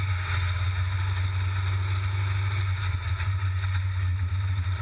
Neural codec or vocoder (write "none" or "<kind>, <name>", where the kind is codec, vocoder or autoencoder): none